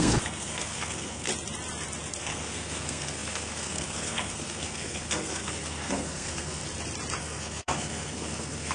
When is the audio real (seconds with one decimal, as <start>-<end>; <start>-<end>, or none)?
1.3-2.2; 6.6-7.2